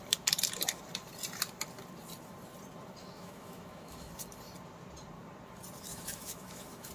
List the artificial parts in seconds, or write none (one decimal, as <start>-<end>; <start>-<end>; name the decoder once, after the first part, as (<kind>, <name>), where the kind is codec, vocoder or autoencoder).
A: 3.0-4.1 (autoencoder, DAC-VAE); 5.9-6.9